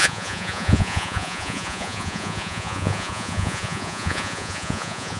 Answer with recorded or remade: remade